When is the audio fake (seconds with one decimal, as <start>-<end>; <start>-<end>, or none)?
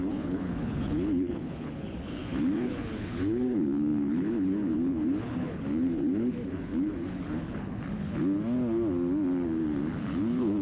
0.0-8.2; 10.0-10.6